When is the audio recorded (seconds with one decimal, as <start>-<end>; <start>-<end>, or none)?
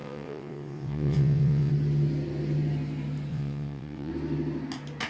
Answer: 1.7-3.3; 4.1-5.1